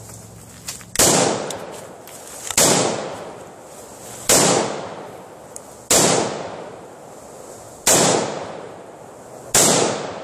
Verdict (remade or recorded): recorded